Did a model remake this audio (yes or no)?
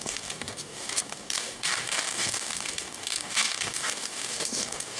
yes